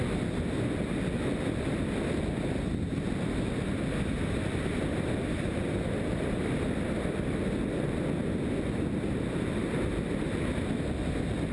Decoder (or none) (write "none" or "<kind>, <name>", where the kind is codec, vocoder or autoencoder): none